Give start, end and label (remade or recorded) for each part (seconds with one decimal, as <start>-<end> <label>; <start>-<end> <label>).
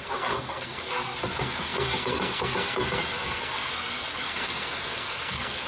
0.0-5.7 remade